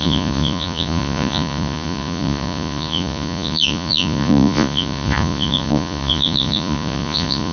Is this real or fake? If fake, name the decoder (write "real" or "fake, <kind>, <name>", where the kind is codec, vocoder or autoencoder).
fake, vocoder, Vocos